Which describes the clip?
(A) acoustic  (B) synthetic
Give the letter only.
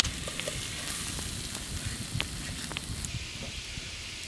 A